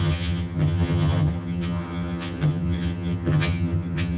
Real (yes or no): no